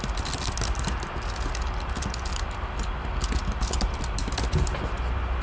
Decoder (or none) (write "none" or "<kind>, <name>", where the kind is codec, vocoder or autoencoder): none